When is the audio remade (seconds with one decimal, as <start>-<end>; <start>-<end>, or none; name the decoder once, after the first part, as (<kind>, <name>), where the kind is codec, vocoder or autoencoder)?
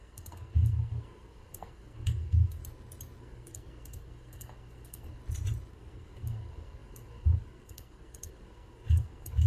0.0-2.6 (codec, SNAC); 3.2-5.2; 5.7-9.5